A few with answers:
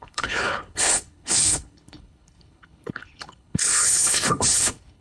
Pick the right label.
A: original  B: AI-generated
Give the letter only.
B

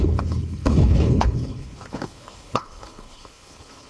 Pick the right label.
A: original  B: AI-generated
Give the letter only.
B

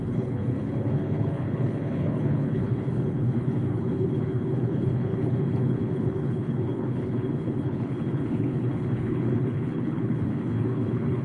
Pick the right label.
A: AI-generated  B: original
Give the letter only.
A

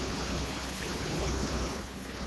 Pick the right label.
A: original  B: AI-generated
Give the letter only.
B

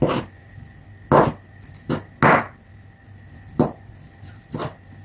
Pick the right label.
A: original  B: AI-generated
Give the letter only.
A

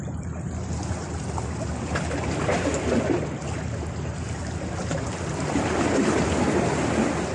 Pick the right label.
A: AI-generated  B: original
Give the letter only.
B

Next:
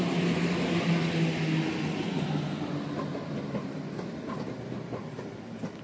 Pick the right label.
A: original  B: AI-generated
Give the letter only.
A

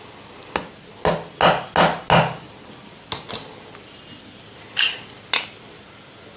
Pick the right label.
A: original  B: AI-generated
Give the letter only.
A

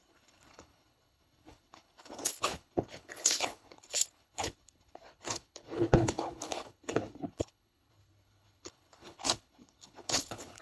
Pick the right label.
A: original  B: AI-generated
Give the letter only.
B